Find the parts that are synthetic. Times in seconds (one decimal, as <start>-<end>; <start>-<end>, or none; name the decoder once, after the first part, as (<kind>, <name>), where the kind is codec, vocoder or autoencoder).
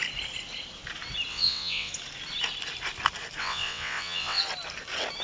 1.3-1.9 (vocoder, WaveNeXt); 3.4-4.4